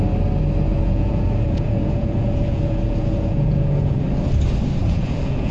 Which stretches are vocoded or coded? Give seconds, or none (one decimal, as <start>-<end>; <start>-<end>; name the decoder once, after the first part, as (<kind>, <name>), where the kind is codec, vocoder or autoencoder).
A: 0.7-4.0 (vocoder, Vocos); 4.8-5.5